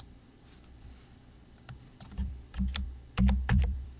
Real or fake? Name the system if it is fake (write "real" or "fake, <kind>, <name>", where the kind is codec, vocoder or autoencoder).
fake, vocoder, BigVGAN v2